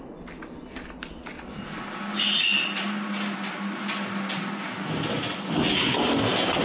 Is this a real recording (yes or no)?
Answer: yes